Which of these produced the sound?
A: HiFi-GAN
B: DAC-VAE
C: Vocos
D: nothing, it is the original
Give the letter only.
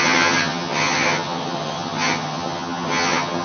A